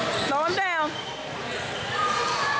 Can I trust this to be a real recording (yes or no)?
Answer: yes